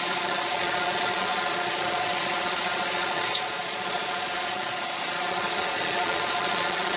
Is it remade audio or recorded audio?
remade